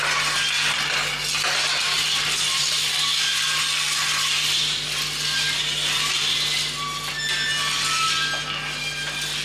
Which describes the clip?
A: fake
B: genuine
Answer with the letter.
B